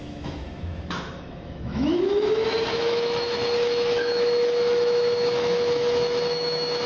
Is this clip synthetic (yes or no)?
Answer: yes